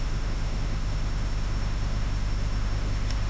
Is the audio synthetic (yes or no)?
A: yes